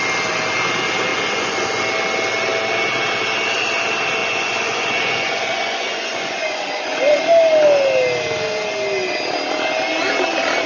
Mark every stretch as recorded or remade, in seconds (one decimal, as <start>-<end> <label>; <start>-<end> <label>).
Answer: 0.0-1.1 recorded; 1.1-1.8 remade; 1.8-4.2 recorded; 4.2-7.0 remade; 7.0-10.7 recorded